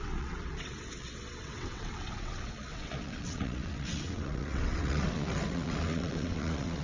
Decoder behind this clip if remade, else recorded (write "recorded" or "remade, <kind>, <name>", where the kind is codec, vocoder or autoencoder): remade, vocoder, WaveNeXt